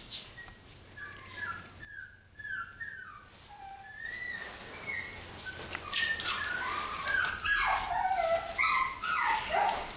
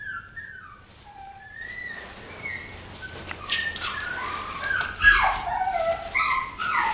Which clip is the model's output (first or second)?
second